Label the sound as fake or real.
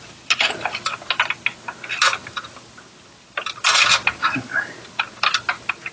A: real